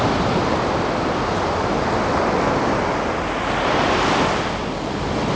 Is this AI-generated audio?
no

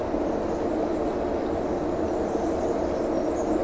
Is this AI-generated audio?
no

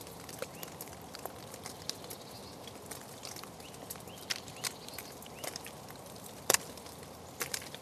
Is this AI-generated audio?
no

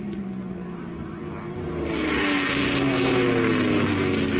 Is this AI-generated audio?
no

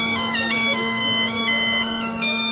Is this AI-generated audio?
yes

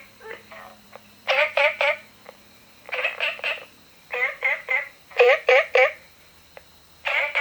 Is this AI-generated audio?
yes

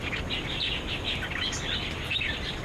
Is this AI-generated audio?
no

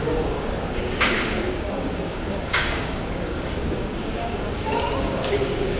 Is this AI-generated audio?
yes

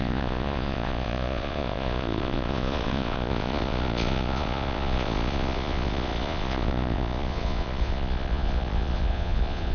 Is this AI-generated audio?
yes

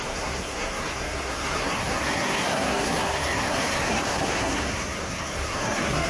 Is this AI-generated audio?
yes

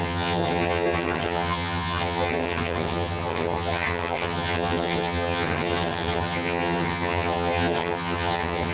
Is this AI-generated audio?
yes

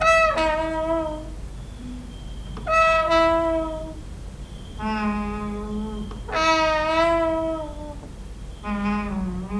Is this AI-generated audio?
no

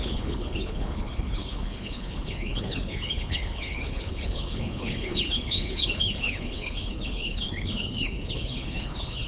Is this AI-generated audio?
yes